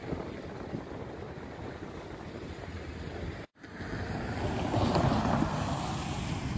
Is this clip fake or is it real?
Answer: real